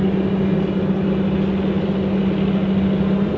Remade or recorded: recorded